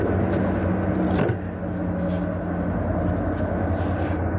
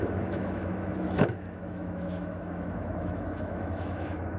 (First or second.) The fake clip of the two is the second